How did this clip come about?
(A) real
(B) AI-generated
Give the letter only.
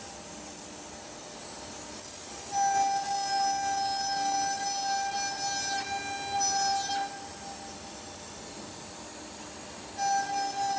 A